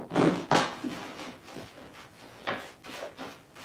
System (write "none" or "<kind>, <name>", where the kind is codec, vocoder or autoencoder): vocoder, BigVGAN v2